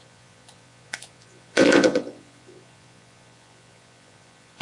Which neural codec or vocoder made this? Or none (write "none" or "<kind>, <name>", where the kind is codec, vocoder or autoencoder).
vocoder, Vocos